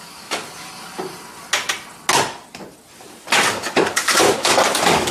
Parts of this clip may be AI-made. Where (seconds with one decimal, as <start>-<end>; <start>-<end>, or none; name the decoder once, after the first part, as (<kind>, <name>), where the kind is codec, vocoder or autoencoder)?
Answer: 0.0-0.4 (codec, DAC); 3.5-5.1